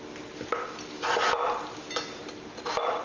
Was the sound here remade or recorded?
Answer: recorded